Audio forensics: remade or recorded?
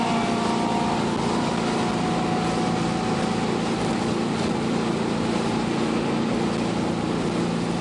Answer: recorded